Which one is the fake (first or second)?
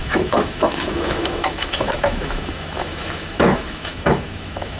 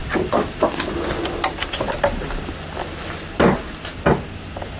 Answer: first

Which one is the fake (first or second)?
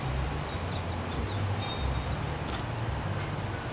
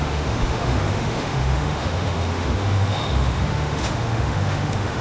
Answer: second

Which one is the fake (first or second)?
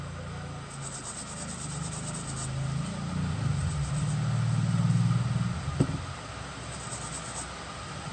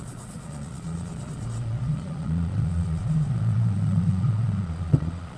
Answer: second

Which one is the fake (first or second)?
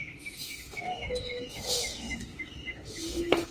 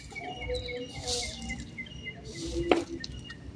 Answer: first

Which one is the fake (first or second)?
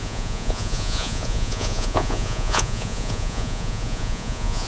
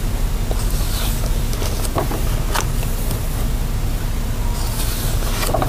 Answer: first